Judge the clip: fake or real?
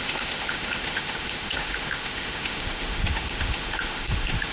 fake